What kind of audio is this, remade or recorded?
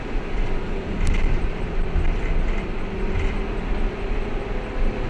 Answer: recorded